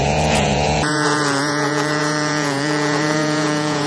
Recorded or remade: remade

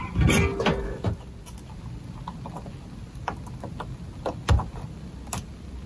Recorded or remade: recorded